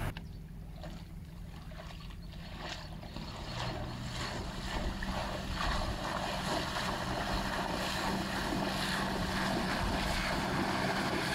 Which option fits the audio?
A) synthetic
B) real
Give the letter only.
B